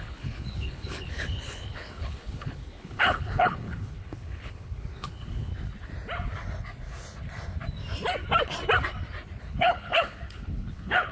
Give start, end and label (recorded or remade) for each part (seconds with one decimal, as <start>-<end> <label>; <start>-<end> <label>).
0.0-5.5 remade; 5.5-9.4 recorded; 9.4-11.1 remade